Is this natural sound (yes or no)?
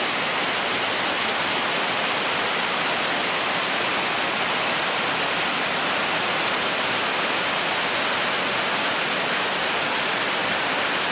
yes